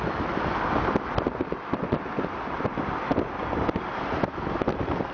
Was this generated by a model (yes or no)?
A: no